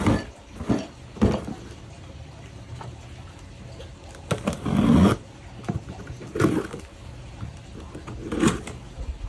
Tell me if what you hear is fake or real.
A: real